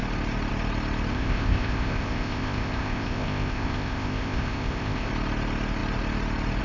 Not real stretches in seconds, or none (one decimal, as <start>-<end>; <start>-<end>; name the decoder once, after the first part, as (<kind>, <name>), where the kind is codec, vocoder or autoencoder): 1.1-5.1 (codec, ZipCodec)